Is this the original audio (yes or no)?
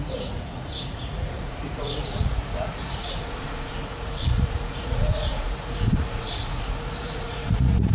no